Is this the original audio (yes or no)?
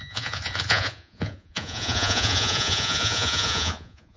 no